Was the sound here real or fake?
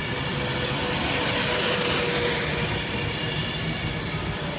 real